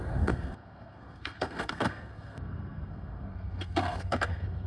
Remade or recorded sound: remade